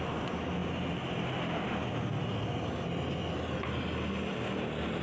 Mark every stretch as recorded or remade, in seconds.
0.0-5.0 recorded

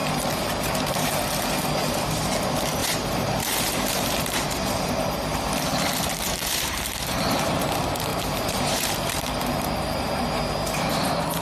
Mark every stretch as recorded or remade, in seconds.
0.0-1.1 remade; 1.1-2.8 recorded; 2.8-7.7 remade; 7.7-8.1 recorded; 8.1-10.4 remade; 10.4-11.4 recorded